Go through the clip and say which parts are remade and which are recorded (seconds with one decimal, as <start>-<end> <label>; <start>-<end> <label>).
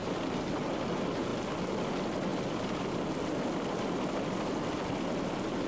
0.0-5.7 recorded